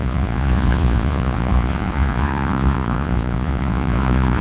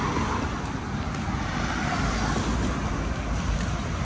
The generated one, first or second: first